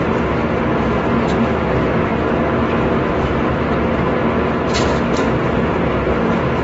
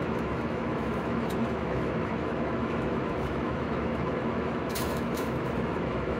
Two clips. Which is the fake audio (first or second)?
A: second